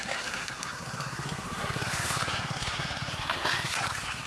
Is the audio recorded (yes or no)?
no